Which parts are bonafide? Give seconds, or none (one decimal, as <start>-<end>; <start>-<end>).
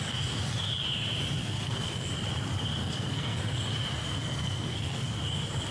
0.0-1.4; 2.1-2.8; 3.4-4.1; 5.1-5.7